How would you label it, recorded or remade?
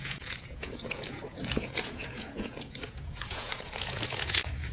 remade